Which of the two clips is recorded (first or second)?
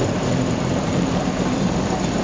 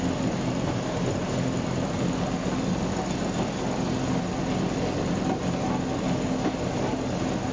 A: second